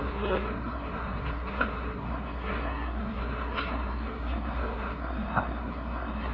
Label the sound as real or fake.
fake